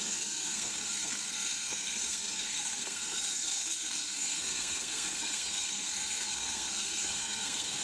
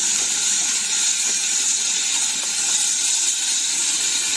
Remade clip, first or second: first